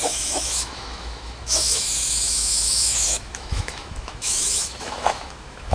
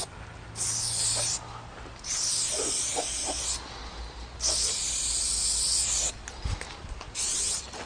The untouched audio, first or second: second